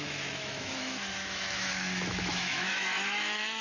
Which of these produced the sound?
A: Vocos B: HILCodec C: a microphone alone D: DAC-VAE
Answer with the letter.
D